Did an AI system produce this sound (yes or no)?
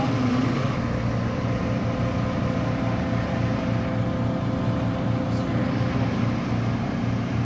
no